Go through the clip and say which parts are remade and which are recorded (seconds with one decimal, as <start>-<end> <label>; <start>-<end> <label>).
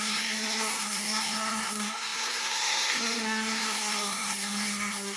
0.0-5.2 remade